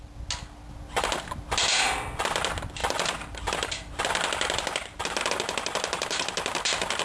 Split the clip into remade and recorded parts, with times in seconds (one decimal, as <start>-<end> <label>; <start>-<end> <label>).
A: 0.0-7.0 recorded